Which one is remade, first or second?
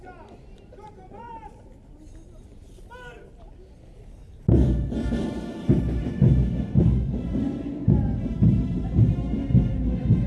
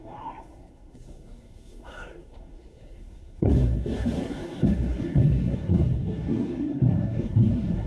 second